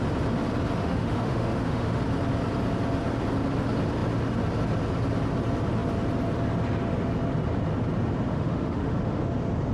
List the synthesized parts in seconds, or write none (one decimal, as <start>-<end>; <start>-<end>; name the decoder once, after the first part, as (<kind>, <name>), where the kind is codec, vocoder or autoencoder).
0.8-2.0 (autoencoder, DAC-VAE); 8.3-9.2